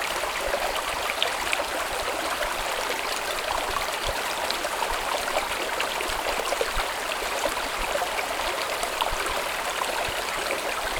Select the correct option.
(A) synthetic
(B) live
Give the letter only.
A